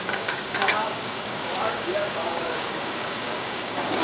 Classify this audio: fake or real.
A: fake